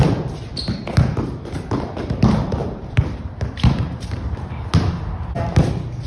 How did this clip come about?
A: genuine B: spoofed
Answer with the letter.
A